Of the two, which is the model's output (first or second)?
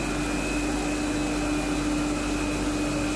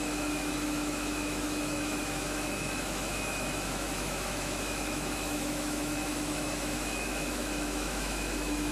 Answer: second